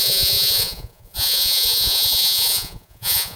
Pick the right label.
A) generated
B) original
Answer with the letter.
A